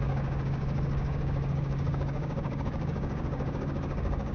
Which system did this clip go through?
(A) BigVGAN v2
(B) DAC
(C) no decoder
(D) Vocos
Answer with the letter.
B